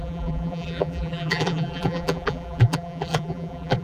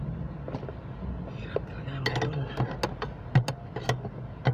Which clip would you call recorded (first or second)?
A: second